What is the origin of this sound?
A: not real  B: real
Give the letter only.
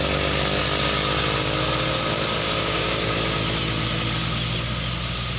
B